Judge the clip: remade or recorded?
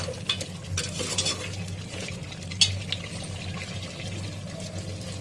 recorded